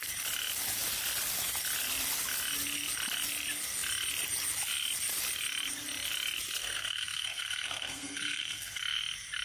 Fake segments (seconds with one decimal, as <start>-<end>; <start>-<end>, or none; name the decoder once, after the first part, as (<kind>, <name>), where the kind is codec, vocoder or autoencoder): 6.6-8.8 (codec, SNAC)